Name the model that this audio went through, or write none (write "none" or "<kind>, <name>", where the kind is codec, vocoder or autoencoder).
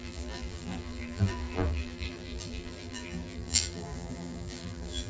vocoder, BigVGAN v2